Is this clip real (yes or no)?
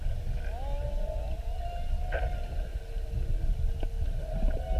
yes